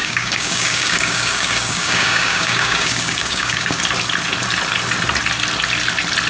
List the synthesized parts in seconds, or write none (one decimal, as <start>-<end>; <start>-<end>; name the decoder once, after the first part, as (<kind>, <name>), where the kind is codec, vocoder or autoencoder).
0.0-3.8 (codec, DAC)